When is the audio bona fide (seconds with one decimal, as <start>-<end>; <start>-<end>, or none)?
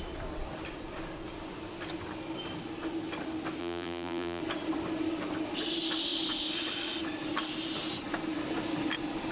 0.0-3.6; 4.4-9.3